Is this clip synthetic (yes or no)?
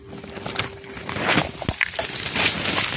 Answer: no